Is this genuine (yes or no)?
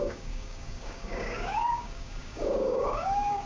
no